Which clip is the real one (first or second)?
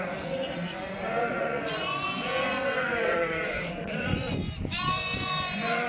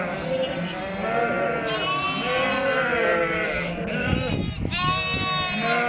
second